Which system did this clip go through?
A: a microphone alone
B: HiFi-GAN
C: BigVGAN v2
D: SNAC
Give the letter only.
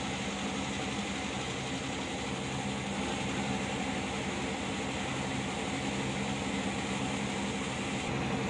A